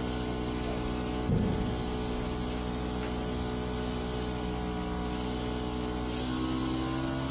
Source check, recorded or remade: recorded